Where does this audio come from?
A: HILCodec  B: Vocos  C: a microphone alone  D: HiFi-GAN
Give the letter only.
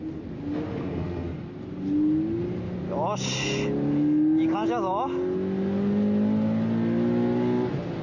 C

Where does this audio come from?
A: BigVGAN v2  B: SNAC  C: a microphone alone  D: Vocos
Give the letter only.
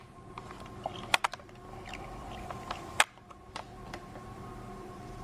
A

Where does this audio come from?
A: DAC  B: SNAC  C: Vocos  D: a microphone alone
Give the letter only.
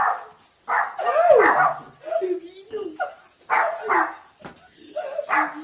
D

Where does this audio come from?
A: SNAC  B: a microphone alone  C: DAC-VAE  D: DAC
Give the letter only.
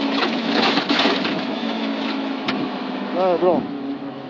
C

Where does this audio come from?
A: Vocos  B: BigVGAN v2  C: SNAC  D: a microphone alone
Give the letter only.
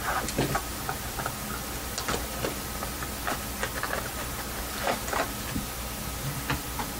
D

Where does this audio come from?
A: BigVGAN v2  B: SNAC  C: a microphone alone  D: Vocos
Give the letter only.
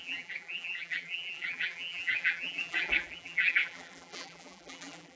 A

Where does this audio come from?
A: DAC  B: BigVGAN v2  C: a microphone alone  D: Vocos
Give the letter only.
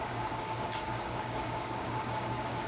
A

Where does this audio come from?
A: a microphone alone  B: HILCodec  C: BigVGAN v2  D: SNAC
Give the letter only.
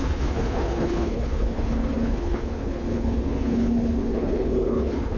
B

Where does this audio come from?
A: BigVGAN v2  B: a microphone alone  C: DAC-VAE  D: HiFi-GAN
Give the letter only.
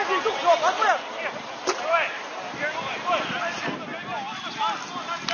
B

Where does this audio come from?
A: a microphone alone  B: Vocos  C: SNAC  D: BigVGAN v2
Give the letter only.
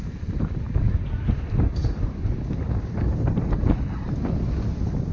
A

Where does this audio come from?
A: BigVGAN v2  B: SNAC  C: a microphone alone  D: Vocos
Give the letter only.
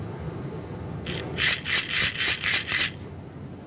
C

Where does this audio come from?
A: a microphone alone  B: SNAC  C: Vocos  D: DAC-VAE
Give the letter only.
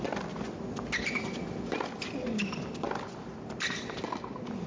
A